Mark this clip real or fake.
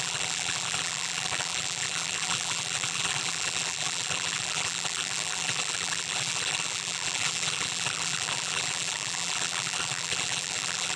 fake